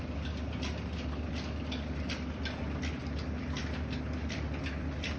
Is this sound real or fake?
real